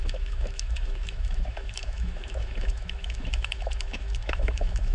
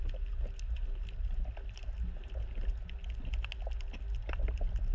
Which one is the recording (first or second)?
second